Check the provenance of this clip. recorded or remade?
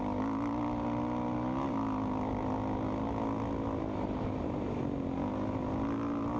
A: recorded